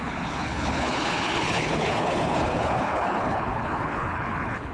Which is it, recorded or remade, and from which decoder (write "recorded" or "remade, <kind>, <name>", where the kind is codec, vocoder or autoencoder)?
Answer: remade, codec, HILCodec